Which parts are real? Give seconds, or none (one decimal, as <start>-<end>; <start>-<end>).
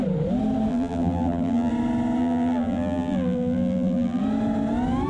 0.0-0.7; 1.7-2.2; 4.2-5.1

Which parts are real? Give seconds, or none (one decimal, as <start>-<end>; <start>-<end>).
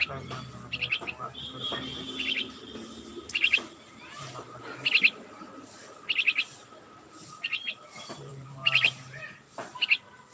0.0-3.1; 3.6-8.3; 9.2-10.3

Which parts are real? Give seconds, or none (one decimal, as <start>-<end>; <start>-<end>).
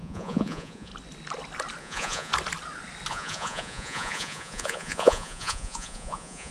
0.9-1.8; 2.3-3.1